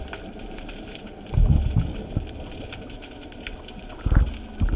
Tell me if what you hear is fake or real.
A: real